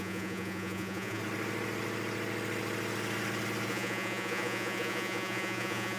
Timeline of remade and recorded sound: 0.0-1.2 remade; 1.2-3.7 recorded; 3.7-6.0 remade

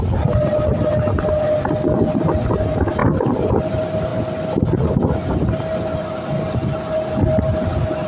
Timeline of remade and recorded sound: 0.0-8.1 recorded

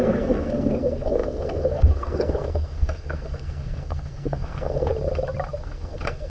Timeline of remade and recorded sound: 0.0-4.9 remade; 4.9-5.6 recorded; 5.6-6.3 remade

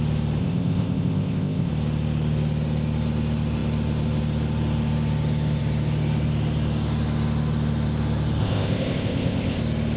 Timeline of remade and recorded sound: 0.0-0.4 recorded; 0.4-1.7 remade; 1.7-8.4 recorded; 8.4-9.6 remade; 9.6-10.0 recorded

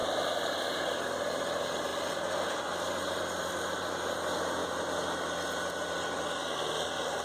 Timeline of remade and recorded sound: 0.0-1.4 remade; 1.4-7.2 recorded